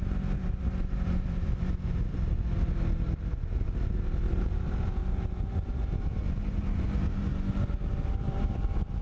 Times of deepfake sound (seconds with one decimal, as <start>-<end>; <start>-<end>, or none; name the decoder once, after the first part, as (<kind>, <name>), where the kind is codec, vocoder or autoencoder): 0.0-2.1 (vocoder, BigVGAN v2); 4.4-7.3; 8.2-9.0